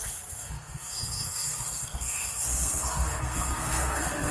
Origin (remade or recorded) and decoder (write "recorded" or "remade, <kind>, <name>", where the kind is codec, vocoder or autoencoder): remade, codec, SNAC